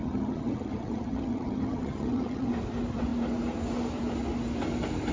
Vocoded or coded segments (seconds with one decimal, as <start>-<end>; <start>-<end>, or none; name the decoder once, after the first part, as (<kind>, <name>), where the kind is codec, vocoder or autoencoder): 0.0-2.5 (vocoder, HiFi-GAN)